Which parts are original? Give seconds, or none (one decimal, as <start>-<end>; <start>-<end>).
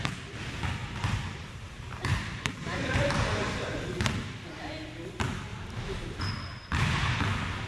0.0-0.8; 3.6-7.7